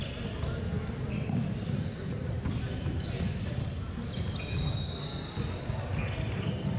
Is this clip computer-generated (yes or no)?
no